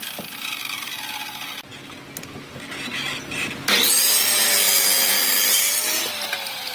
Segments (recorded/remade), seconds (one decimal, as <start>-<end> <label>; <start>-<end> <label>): 0.0-6.7 recorded